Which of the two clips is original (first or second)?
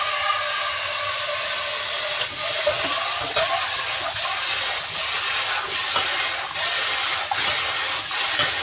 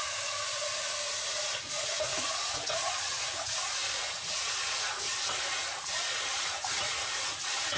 first